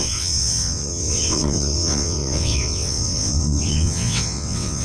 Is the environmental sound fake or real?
fake